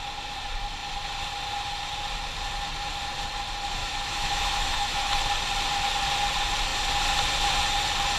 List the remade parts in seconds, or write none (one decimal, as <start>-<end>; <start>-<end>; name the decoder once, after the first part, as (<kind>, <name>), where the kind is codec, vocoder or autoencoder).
3.8-5.2 (autoencoder, DAC-VAE)